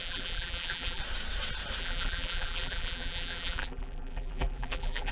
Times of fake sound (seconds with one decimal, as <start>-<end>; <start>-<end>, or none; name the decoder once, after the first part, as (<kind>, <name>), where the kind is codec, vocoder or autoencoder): 0.0-1.0 (vocoder, BigVGAN v2); 1.8-5.1